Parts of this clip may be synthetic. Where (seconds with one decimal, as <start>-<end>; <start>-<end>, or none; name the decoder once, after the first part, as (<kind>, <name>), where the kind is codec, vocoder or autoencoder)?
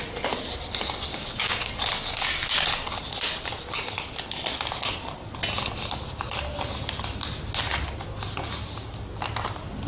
1.1-1.7 (codec, DAC)